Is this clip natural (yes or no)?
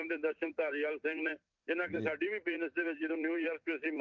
no